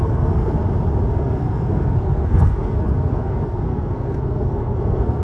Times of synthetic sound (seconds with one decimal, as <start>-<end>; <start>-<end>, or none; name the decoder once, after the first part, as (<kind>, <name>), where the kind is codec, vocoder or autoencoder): 0.0-0.6 (codec, SNAC); 1.1-5.2